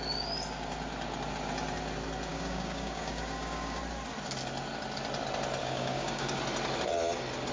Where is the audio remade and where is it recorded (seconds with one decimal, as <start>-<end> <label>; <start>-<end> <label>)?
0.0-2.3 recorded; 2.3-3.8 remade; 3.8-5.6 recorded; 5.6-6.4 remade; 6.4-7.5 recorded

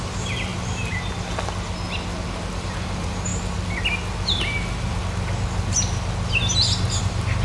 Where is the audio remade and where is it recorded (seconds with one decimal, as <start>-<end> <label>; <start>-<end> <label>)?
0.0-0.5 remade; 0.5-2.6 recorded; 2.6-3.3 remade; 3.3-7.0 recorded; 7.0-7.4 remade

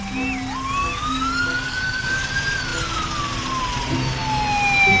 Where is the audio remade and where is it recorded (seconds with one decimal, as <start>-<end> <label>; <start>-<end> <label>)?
0.0-0.8 recorded; 0.8-2.3 remade; 2.3-5.0 recorded

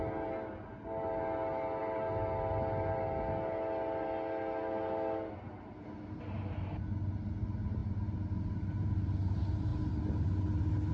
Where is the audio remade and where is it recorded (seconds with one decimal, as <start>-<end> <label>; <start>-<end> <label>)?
0.0-10.9 recorded

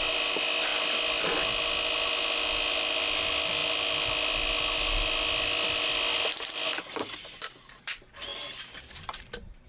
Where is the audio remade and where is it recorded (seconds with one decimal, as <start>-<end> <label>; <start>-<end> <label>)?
0.0-9.7 recorded

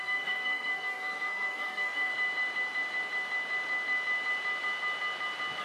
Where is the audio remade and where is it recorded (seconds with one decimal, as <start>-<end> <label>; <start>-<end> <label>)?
0.0-2.1 remade; 2.1-5.6 recorded